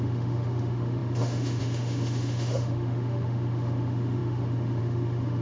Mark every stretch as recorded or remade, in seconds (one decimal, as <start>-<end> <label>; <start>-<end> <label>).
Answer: 0.0-5.4 remade